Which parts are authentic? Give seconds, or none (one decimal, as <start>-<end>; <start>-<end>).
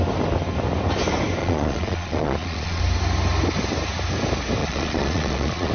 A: 0.0-1.4; 2.8-4.6